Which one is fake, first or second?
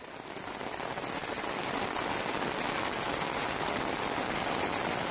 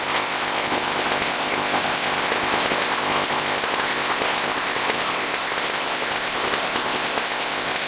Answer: second